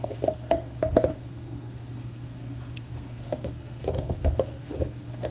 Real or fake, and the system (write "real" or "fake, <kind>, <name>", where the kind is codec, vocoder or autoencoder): fake, codec, SNAC